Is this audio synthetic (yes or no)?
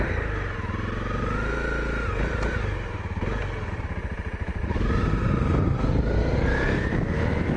no